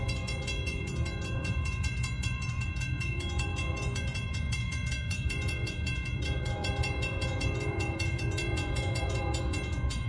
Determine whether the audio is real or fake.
fake